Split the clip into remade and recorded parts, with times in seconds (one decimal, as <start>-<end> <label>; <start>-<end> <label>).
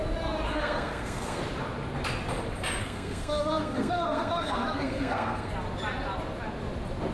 0.0-0.5 recorded; 0.5-1.4 remade; 1.4-2.8 recorded; 2.8-5.5 remade; 5.5-7.1 recorded